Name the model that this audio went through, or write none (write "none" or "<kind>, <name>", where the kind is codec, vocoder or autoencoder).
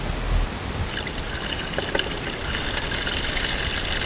none